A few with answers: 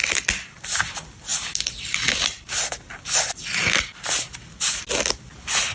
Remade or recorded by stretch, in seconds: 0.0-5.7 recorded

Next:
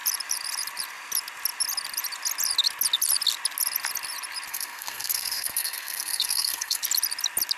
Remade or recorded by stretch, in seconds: 0.0-4.5 recorded; 4.5-6.8 remade; 6.8-7.6 recorded

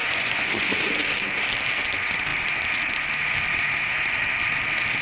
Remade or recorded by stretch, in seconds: 0.0-0.9 remade; 0.9-5.0 recorded

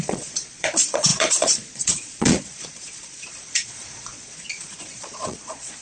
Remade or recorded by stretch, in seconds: 0.0-5.8 remade

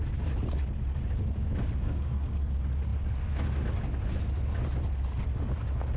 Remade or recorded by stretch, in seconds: 0.0-1.8 recorded; 1.8-2.5 remade; 2.5-6.0 recorded